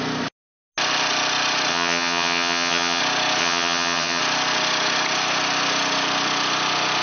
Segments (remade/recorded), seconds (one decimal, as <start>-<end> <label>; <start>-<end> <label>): 0.0-1.7 recorded; 1.7-3.0 remade; 3.0-3.4 recorded; 3.4-4.2 remade; 4.2-7.0 recorded